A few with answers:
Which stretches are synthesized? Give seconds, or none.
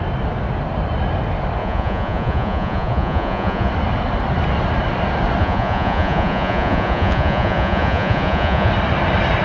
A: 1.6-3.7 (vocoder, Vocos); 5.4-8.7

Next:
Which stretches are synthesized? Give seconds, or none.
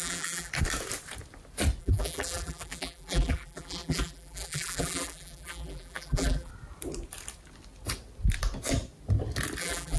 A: 0.0-0.5 (vocoder, BigVGAN v2); 1.8-6.5; 9.6-10.0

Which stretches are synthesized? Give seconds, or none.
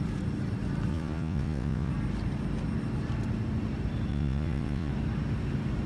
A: 0.9-1.9 (vocoder, Vocos); 4.1-4.9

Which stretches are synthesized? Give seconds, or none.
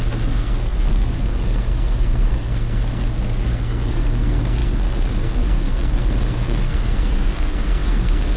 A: 0.0-8.4 (codec, SNAC)